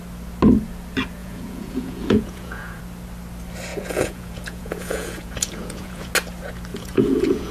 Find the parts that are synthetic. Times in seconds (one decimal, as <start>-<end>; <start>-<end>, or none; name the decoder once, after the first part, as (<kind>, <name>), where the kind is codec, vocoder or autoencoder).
1.2-2.8 (vocoder, Vocos); 3.7-6.1; 6.7-7.5